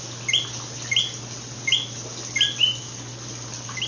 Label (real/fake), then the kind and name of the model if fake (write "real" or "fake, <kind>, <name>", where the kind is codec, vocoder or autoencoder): real